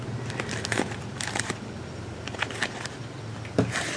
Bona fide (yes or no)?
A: yes